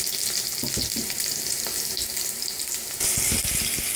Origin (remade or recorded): recorded